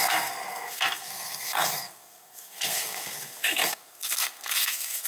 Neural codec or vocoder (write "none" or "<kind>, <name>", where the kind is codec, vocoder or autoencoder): codec, SNAC